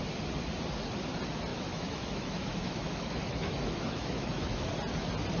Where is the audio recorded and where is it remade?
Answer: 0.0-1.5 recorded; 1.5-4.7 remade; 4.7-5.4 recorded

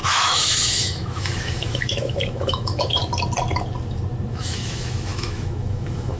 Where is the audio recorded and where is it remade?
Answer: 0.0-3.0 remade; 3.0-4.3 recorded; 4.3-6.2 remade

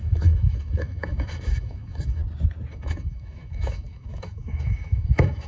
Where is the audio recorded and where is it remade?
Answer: 0.0-2.2 remade; 2.2-2.7 recorded; 2.7-5.5 remade

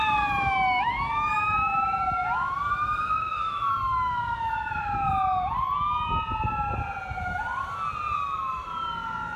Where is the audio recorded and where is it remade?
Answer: 0.0-5.1 remade; 5.1-9.4 recorded